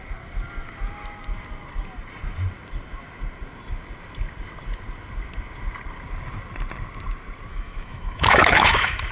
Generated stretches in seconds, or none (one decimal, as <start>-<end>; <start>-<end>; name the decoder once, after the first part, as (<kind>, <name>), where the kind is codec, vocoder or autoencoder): 7.5-9.1 (autoencoder, DAC-VAE)